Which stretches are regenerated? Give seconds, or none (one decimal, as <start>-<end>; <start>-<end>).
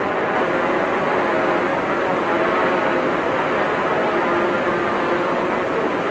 none